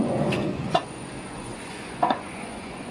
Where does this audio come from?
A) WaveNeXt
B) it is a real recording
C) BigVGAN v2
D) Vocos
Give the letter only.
D